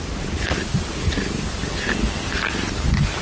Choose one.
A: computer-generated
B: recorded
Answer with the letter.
B